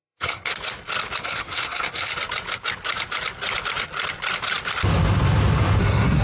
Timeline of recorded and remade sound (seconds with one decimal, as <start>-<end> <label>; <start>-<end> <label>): 0.0-0.5 remade; 0.5-1.2 recorded; 1.2-2.1 remade; 2.1-5.8 recorded; 5.8-6.2 remade